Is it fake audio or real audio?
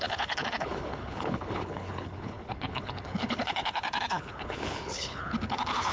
fake